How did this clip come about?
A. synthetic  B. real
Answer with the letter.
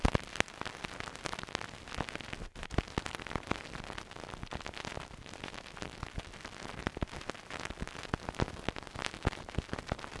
A